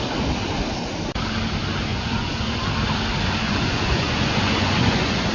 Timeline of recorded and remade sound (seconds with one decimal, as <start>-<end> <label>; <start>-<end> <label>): 0.0-1.9 recorded; 1.9-2.7 remade; 2.7-3.4 recorded; 3.4-5.3 remade